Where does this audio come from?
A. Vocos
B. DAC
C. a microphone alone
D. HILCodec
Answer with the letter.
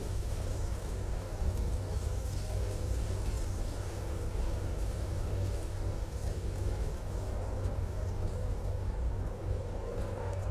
B